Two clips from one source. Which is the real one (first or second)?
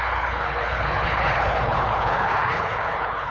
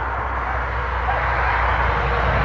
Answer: second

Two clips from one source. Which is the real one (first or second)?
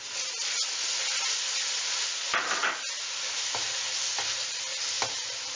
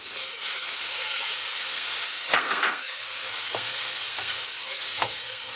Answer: first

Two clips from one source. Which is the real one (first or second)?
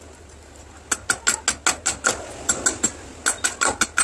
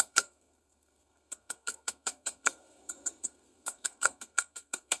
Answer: first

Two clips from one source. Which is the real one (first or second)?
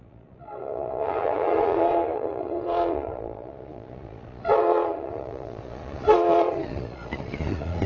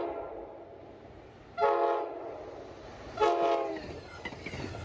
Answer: second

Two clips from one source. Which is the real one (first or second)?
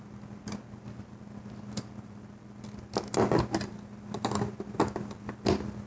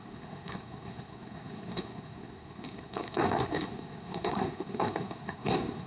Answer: first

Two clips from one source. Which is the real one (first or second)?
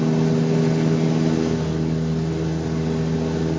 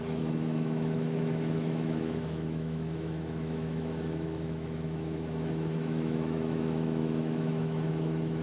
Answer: first